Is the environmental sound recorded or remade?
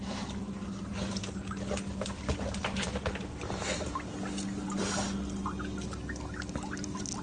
recorded